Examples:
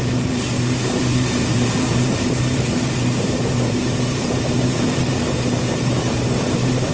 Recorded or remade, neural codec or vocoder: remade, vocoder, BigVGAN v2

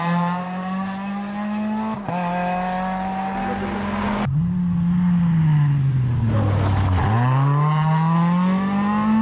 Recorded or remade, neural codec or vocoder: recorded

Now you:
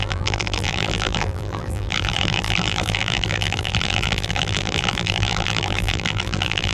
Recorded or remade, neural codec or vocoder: remade, vocoder, BigVGAN v2